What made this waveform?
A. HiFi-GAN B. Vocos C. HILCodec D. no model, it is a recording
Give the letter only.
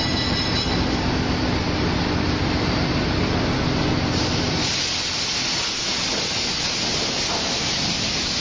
D